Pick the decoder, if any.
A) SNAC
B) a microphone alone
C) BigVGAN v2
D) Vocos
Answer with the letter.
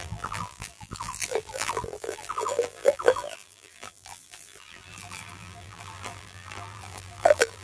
C